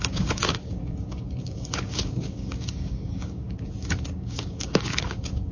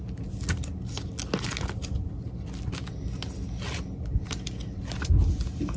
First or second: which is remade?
first